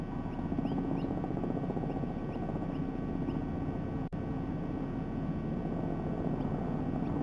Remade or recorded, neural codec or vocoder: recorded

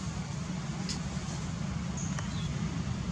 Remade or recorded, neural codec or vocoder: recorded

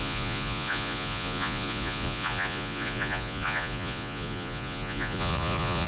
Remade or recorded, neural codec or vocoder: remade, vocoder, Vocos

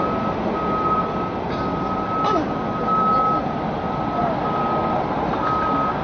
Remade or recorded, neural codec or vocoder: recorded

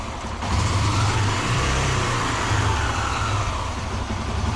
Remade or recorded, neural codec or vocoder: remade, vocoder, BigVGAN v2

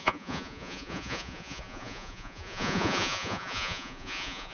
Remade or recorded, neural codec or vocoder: remade, vocoder, Vocos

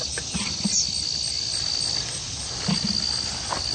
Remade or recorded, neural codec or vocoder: recorded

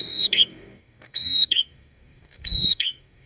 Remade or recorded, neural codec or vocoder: remade, codec, DAC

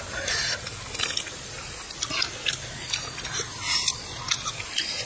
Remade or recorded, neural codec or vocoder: recorded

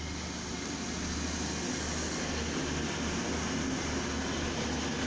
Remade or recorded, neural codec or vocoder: recorded